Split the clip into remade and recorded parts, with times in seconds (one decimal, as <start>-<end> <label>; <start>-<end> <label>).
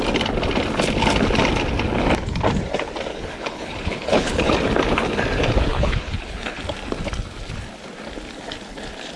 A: 0.0-3.1 recorded; 3.1-4.5 remade; 4.5-5.7 recorded; 5.7-6.6 remade; 6.6-9.2 recorded